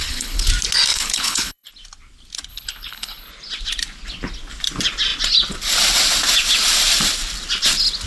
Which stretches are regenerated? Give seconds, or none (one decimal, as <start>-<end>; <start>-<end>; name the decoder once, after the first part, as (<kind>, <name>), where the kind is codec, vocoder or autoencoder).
0.0-0.5 (codec, HILCodec); 0.9-1.7; 2.5-3.3